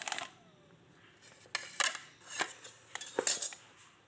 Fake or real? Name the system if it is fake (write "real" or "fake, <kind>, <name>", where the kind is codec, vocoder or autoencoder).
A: real